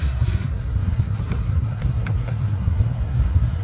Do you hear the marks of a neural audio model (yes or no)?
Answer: yes